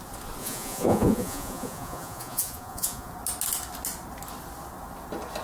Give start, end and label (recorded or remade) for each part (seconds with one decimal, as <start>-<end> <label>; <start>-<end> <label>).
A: 0.0-0.4 recorded; 0.4-3.1 remade; 3.1-5.4 recorded